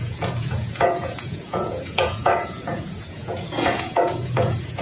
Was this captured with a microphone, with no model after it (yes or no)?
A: no